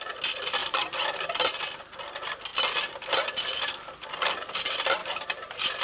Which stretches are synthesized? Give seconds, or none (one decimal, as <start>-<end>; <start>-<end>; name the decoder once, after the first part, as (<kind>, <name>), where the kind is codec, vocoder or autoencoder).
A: 0.6-1.5 (vocoder, BigVGAN v2); 5.0-5.8